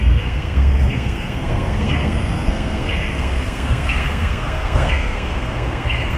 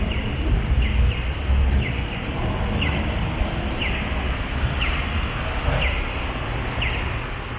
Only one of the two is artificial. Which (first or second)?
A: first